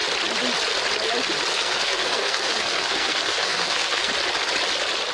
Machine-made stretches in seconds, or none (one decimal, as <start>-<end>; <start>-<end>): 1.5-4.1